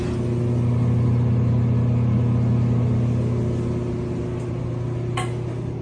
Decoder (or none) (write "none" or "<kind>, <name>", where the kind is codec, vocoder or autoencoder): none